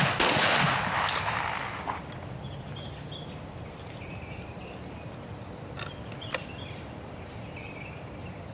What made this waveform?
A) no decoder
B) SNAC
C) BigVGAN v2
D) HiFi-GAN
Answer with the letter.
A